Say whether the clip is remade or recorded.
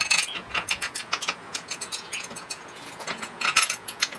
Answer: remade